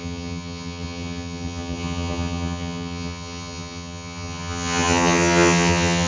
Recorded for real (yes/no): no